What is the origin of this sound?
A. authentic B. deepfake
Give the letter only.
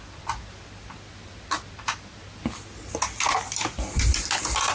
A